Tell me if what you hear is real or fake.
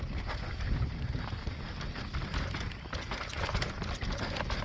fake